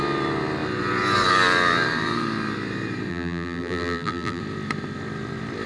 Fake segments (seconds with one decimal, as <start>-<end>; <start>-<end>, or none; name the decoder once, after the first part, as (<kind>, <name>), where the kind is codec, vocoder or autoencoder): 3.1-4.4 (vocoder, BigVGAN v2)